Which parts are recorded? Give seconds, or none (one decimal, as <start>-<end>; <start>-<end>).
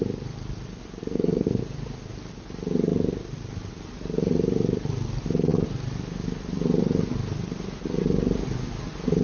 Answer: 0.0-1.0; 1.6-9.2